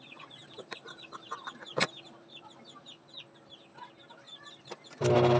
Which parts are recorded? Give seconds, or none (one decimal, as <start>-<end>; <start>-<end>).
0.0-0.4; 3.6-5.4